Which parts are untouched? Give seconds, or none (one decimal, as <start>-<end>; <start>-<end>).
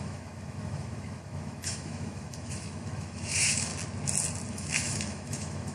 3.7-4.5